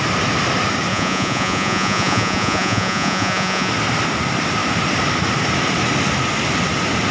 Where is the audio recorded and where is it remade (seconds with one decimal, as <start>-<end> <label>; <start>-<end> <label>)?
0.0-0.9 recorded; 0.9-3.7 remade; 3.7-7.1 recorded